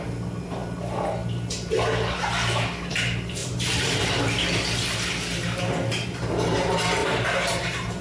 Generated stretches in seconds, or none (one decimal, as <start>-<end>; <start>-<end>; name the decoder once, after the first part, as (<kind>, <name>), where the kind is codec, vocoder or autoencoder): 3.4-4.1 (vocoder, BigVGAN v2); 7.0-8.0